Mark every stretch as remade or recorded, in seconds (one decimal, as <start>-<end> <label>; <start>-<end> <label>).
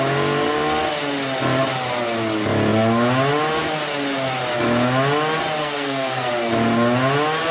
0.0-5.6 recorded; 5.6-6.3 remade; 6.3-7.5 recorded